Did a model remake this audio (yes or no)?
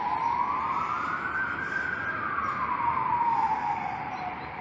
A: yes